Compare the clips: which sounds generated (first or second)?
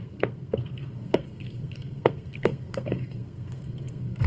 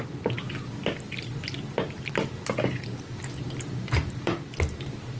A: first